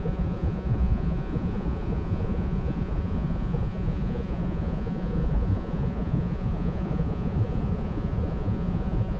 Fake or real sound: fake